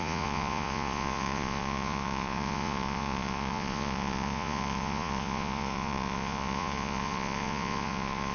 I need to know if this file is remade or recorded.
remade